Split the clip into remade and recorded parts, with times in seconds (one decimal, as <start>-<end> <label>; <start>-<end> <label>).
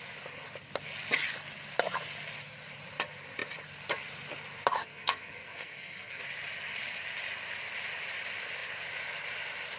0.0-4.8 recorded; 4.8-6.2 remade; 6.2-9.8 recorded